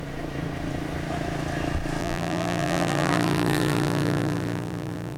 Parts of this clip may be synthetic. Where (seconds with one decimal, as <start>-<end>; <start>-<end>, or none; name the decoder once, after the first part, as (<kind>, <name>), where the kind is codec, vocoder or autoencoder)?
2.0-5.2 (vocoder, BigVGAN v2)